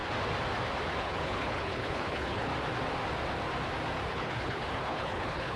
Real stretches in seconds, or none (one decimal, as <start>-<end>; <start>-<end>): 0.0-1.0; 2.5-4.1